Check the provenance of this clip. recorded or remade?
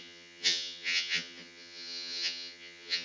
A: remade